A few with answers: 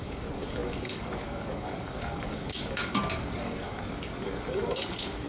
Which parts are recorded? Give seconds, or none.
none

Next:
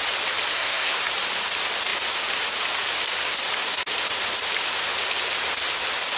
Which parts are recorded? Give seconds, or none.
0.0-0.5; 1.0-6.2